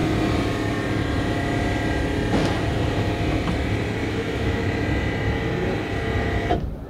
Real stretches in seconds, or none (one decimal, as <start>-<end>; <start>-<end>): 0.0-4.0; 4.8-6.9